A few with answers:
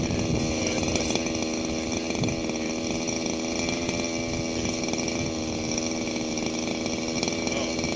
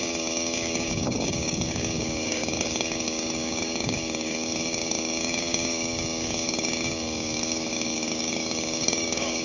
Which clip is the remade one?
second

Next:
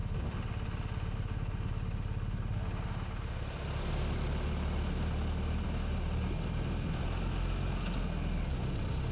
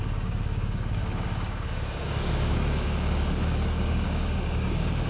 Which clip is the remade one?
second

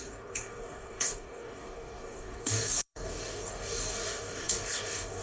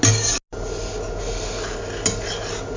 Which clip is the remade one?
first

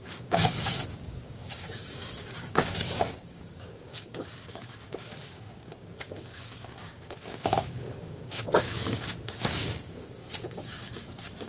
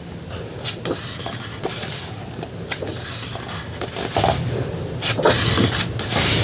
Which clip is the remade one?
first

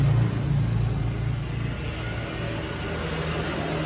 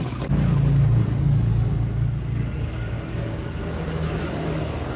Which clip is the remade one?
second